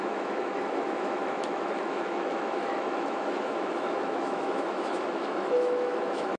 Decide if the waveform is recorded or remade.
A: remade